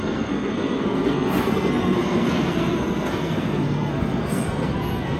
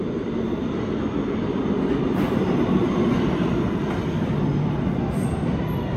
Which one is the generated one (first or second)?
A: first